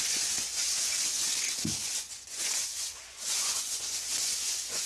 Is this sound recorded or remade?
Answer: remade